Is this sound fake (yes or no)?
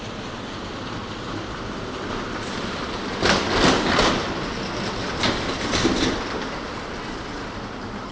yes